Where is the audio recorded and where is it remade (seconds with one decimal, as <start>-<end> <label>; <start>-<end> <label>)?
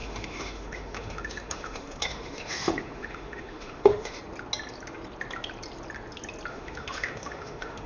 0.0-4.2 remade; 4.2-6.5 recorded; 6.5-7.9 remade